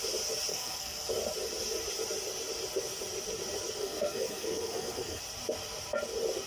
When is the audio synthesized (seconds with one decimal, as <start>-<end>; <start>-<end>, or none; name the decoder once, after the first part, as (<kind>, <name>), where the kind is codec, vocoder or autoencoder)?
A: 0.5-1.1 (codec, SNAC); 3.8-5.2